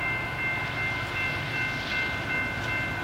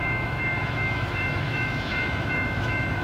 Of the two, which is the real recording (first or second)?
first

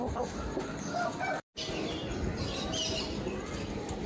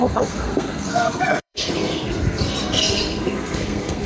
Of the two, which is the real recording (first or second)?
first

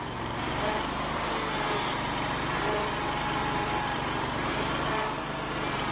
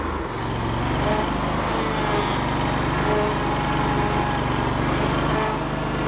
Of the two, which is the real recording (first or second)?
second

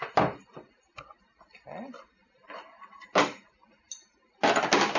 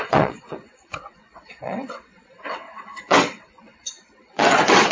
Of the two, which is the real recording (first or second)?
first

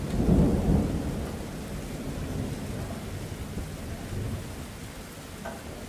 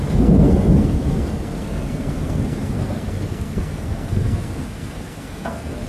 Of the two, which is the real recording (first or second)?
first